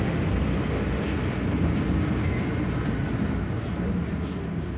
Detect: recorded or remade recorded